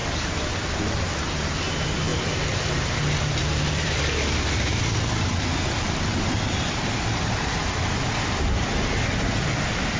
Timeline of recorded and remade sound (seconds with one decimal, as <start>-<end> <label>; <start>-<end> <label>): 0.0-2.1 recorded; 2.1-6.7 remade; 6.7-10.0 recorded